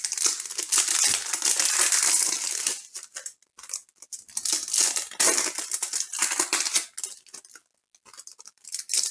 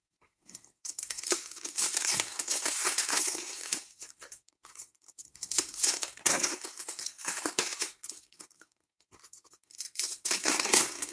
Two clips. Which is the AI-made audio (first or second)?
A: second